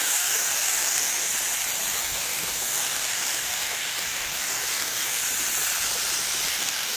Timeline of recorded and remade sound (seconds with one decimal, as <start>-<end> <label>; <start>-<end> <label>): 0.0-1.3 remade; 1.3-2.0 recorded; 2.0-5.2 remade; 5.2-6.5 recorded; 6.5-7.0 remade